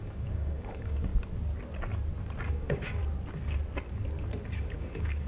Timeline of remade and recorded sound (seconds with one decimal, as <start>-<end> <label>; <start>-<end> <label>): 0.0-1.1 remade; 1.1-2.5 recorded; 2.5-3.0 remade; 3.0-4.7 recorded; 4.7-5.3 remade

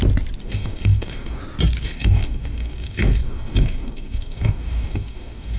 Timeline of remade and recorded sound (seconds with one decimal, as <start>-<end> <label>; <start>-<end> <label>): 0.0-0.4 recorded; 0.4-1.4 remade; 1.4-1.8 recorded; 1.8-5.6 remade

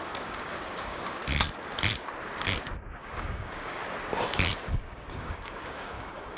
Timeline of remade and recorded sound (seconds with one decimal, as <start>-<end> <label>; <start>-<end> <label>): 0.0-1.2 remade; 1.2-2.7 recorded; 2.7-3.8 remade; 3.8-4.7 recorded; 4.7-6.4 remade

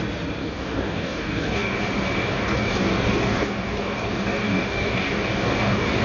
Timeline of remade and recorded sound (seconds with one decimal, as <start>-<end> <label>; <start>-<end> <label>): 0.0-0.4 recorded; 0.4-1.8 remade; 1.8-2.2 recorded; 2.2-6.0 remade